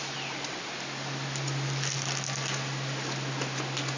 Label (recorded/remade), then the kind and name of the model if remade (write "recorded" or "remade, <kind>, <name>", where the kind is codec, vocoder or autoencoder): recorded